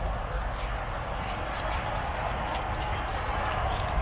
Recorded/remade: recorded